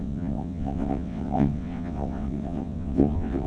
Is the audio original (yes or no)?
no